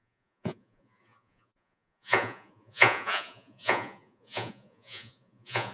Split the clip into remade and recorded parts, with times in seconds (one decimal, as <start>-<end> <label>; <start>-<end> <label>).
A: 0.0-5.7 remade